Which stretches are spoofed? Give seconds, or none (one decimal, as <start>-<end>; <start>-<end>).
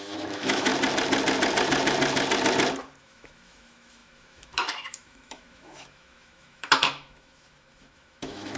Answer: 0.0-0.7; 3.0-8.6